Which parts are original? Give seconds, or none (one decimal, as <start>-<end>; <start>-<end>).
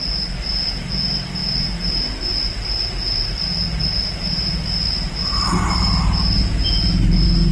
none